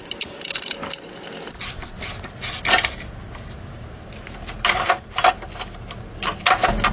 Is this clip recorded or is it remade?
recorded